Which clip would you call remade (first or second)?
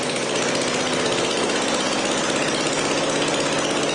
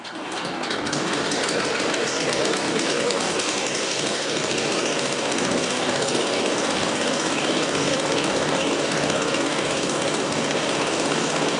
second